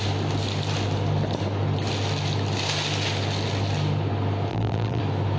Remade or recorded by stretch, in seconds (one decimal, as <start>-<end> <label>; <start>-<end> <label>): 0.0-4.5 recorded; 4.5-5.0 remade; 5.0-5.4 recorded